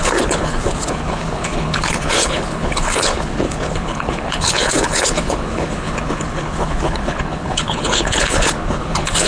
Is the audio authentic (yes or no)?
no